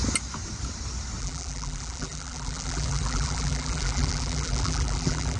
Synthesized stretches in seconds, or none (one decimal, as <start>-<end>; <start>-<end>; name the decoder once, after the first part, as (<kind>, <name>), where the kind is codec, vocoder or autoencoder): 1.2-5.4 (vocoder, BigVGAN v2)